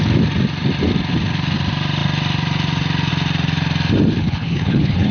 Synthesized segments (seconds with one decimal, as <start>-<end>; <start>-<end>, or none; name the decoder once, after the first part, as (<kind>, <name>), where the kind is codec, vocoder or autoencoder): 4.2-5.1 (codec, HILCodec)